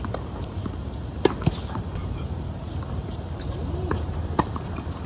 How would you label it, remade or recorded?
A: remade